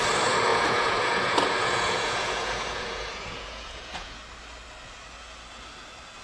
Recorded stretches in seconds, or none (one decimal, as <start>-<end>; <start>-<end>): 0.0-0.5; 4.2-6.2